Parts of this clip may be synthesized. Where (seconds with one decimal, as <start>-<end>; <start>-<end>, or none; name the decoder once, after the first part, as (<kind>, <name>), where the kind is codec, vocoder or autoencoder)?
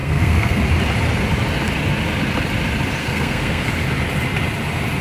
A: 0.0-0.6 (codec, SNAC); 3.0-3.7